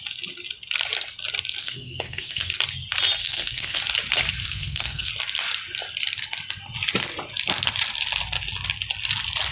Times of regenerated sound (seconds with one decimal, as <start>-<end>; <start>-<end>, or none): 1.6-2.5; 3.2-3.8; 4.4-5.1